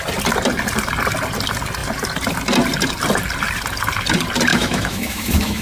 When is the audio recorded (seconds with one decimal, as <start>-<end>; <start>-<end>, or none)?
0.0-4.5